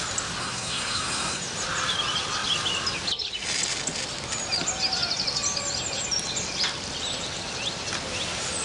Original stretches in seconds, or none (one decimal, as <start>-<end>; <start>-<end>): 0.0-0.4; 1.4-8.6